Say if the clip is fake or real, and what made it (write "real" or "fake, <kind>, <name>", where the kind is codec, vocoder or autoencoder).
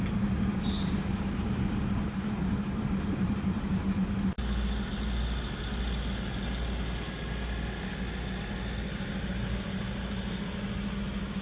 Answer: real